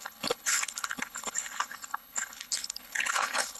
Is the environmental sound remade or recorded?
remade